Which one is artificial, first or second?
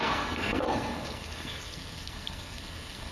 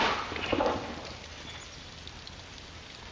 first